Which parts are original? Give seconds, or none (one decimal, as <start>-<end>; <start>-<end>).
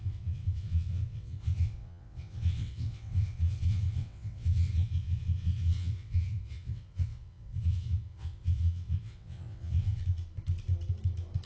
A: 10.0-11.5